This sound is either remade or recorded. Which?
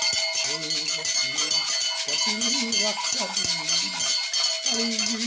recorded